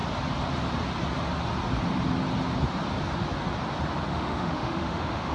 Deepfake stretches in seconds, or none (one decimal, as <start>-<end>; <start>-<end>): 4.1-5.3